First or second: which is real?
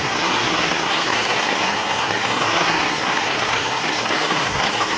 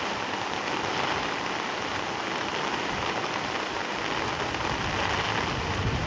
second